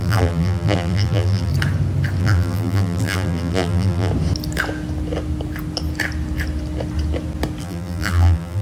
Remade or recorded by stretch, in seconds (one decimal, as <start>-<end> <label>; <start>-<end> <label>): 0.0-1.5 remade; 1.5-2.2 recorded; 2.2-4.1 remade; 4.1-7.6 recorded; 7.6-8.6 remade